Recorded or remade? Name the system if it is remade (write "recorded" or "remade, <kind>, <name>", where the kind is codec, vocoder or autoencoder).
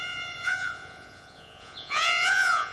remade, vocoder, Vocos